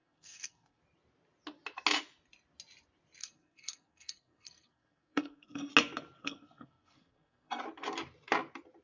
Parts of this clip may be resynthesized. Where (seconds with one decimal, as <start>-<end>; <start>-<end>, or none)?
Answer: 0.0-0.8; 3.2-5.7; 6.2-7.6

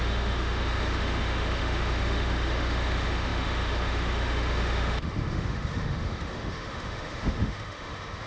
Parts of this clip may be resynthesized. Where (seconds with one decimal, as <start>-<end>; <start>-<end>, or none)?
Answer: 0.0-8.3